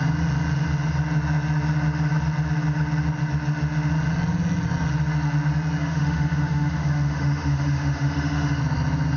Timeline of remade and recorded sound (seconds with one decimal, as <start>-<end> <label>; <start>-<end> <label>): 0.0-5.8 recorded; 5.8-8.6 remade; 8.6-9.2 recorded